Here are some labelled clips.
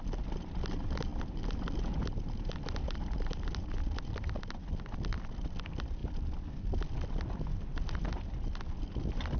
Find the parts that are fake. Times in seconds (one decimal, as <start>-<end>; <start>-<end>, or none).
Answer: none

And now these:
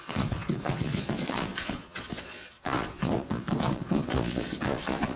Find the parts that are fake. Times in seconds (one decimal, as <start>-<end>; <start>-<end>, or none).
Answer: 0.0-5.2

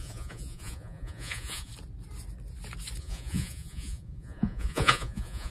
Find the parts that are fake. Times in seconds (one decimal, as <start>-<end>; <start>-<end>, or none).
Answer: 0.0-1.7; 3.0-5.5